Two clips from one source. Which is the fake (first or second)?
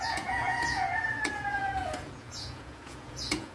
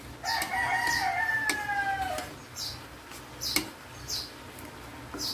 first